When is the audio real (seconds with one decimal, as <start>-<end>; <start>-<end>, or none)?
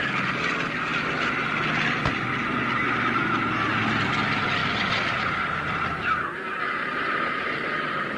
0.0-4.6; 5.2-8.2